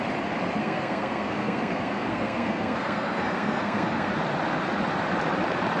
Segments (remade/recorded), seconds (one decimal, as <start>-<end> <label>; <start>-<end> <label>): 0.0-0.6 recorded; 0.6-4.1 remade; 4.1-5.8 recorded